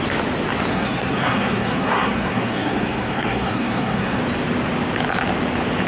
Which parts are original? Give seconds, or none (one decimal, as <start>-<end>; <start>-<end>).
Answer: 0.0-0.7; 4.2-5.9